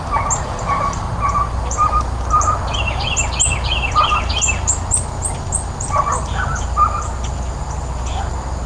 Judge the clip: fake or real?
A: real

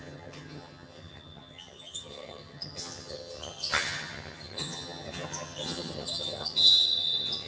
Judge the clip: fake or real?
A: fake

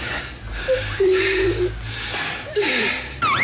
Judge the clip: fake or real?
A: real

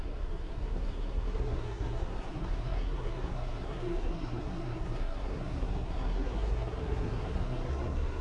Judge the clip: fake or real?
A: fake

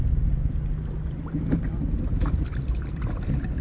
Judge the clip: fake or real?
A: real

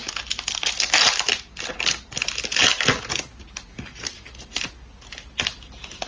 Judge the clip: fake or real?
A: real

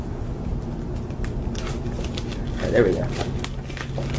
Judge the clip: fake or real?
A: real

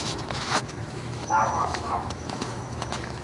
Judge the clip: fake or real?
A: fake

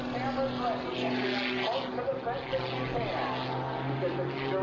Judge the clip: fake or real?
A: real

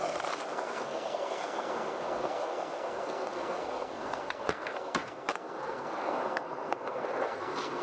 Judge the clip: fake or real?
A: fake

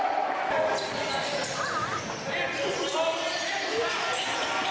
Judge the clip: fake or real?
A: real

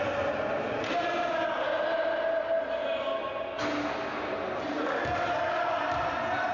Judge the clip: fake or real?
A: real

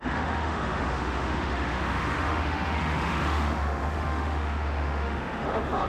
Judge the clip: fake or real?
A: fake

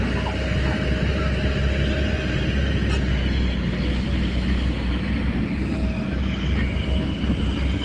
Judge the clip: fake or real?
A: real